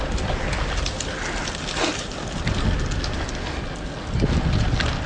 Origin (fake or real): real